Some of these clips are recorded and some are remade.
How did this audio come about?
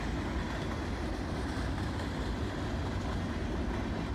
recorded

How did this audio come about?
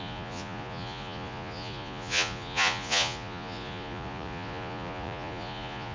remade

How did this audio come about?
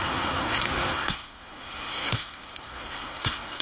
remade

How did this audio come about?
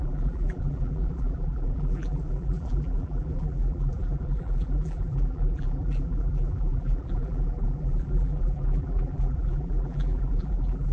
remade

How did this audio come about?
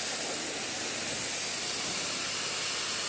recorded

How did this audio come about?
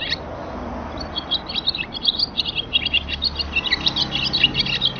recorded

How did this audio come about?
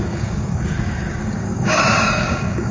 remade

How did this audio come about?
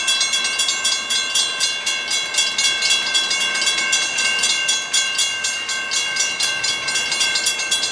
recorded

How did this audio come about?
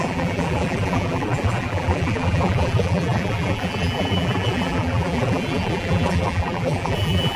remade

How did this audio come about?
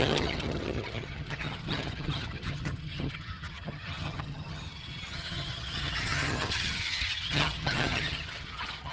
remade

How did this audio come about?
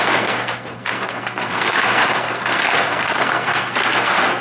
remade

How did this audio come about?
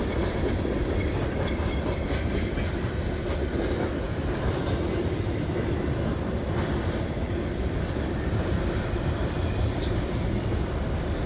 remade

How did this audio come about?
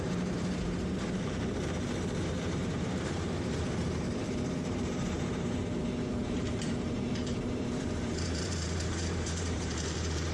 remade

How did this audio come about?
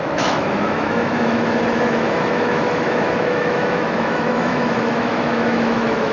remade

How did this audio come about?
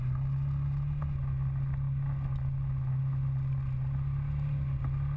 recorded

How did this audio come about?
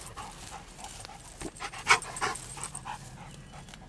recorded